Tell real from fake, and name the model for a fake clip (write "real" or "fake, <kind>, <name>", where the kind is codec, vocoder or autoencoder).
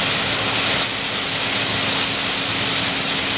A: real